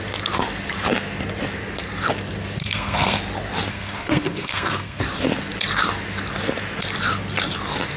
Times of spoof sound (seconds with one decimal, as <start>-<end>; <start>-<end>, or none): 2.6-3.2; 3.7-5.0